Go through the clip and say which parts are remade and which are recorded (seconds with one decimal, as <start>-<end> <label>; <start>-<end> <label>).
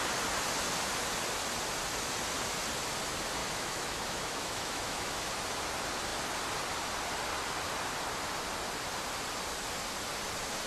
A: 0.0-3.4 recorded; 3.4-5.3 remade; 5.3-10.7 recorded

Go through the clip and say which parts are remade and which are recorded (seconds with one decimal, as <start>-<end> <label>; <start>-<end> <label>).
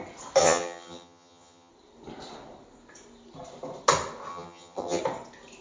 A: 0.0-0.4 recorded; 0.4-1.7 remade; 1.7-4.3 recorded; 4.3-5.0 remade; 5.0-5.6 recorded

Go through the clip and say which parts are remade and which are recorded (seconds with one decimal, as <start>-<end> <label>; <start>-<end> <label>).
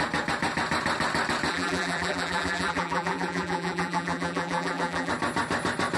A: 0.0-1.5 recorded; 1.5-5.1 remade; 5.1-6.0 recorded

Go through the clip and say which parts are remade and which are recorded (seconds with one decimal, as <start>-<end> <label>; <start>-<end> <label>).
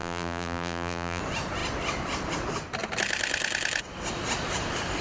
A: 0.0-1.2 remade; 1.2-5.0 recorded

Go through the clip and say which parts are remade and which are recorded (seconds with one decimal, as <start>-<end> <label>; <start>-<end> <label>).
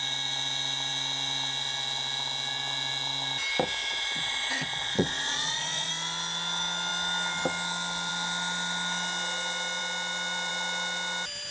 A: 0.0-3.8 recorded; 3.8-5.9 remade; 5.9-11.5 recorded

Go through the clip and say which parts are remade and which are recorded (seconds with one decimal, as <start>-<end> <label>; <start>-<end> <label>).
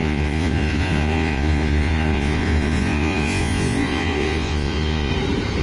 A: 0.0-5.1 remade; 5.1-5.6 recorded